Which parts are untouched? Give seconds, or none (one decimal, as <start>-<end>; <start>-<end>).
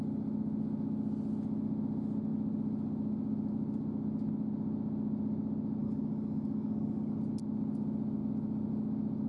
0.0-5.8; 7.2-9.3